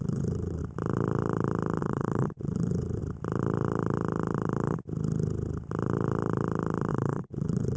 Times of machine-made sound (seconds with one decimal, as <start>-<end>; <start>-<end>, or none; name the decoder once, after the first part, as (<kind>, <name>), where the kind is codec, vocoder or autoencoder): 0.0-0.6 (vocoder, Vocos); 1.8-3.0; 6.9-7.8